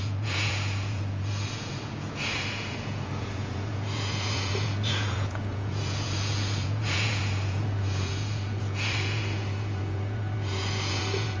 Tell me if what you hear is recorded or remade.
remade